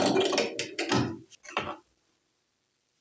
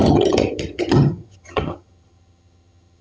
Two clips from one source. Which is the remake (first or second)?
second